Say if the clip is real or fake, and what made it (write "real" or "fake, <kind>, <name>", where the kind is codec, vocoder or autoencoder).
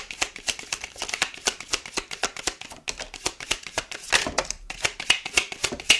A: real